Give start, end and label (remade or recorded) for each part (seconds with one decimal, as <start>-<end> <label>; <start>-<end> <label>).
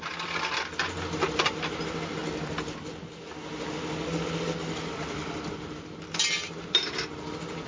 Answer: 0.0-7.7 recorded